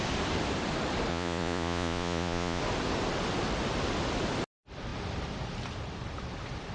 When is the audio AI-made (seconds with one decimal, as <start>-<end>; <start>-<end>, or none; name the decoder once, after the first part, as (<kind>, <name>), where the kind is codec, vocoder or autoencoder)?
1.1-2.6 (vocoder, Vocos)